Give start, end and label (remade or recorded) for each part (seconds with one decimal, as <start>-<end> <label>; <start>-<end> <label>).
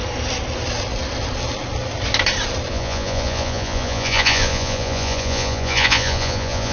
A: 0.0-2.7 recorded; 2.7-6.7 remade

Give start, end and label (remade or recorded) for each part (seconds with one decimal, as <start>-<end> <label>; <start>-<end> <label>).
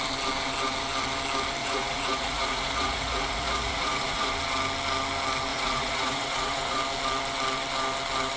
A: 0.0-1.6 recorded; 1.6-4.3 remade; 4.3-5.5 recorded; 5.5-6.8 remade; 6.8-8.4 recorded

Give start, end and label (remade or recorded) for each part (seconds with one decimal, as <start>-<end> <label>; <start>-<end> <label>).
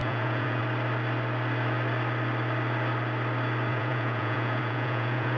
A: 0.0-0.6 remade; 0.6-3.7 recorded; 3.7-5.4 remade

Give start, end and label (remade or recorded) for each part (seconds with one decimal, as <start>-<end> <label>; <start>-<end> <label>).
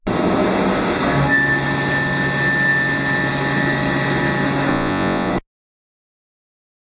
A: 0.0-4.7 recorded; 4.7-5.3 remade; 5.3-6.9 recorded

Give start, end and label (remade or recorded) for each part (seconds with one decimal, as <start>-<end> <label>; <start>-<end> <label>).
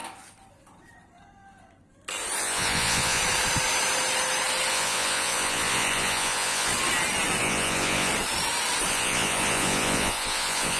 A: 0.0-2.4 recorded; 2.4-3.2 remade; 3.2-4.7 recorded; 4.7-6.7 remade; 6.7-7.4 recorded; 7.4-8.1 remade; 8.1-8.9 recorded; 8.9-10.8 remade